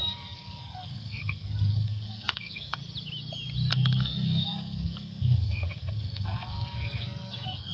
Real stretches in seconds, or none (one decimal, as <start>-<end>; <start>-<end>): 2.8-3.7